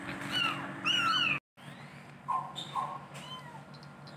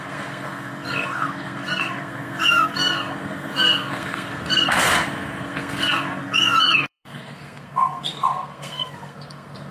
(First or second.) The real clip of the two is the first